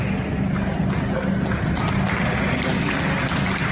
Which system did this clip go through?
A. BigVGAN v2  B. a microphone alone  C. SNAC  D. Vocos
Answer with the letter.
B